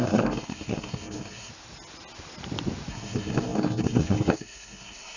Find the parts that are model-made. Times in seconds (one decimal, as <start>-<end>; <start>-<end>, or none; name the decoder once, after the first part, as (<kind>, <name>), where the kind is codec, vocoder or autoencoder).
0.0-1.5 (codec, SNAC); 2.9-5.2